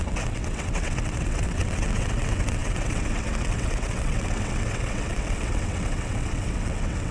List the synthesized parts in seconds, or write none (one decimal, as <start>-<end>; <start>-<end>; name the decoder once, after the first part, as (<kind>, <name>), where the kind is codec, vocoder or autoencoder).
0.0-7.1 (vocoder, WaveNeXt)